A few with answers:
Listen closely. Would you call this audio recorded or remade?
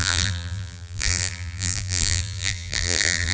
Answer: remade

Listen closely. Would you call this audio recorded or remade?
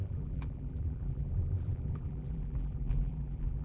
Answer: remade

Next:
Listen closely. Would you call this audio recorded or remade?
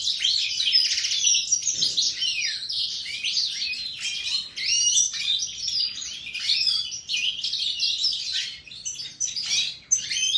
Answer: recorded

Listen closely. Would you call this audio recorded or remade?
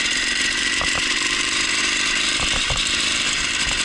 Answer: remade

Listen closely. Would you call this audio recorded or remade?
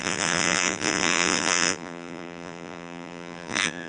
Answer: remade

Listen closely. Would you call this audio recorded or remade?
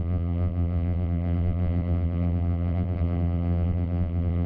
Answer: remade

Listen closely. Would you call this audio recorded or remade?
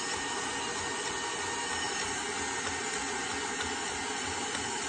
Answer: recorded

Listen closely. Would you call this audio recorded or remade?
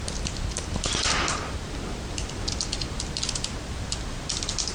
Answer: remade